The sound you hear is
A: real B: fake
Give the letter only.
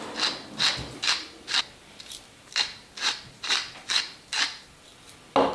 A